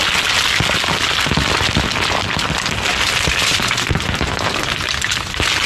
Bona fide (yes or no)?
yes